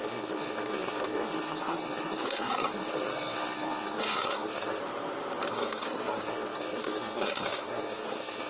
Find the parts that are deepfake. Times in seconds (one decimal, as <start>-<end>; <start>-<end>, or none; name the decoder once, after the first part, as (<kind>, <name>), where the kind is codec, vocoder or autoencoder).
0.0-4.8 (codec, SNAC); 5.5-8.5